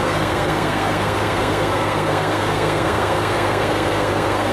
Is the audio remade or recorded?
remade